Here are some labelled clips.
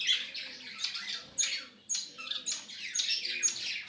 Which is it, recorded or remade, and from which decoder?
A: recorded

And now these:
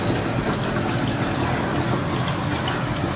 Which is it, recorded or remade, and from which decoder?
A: recorded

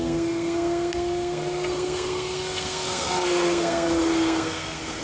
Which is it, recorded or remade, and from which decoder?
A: remade, codec, SNAC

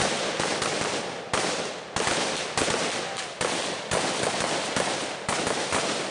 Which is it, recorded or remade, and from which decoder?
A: recorded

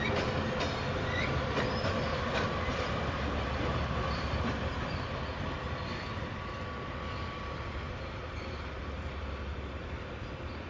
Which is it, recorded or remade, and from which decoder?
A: recorded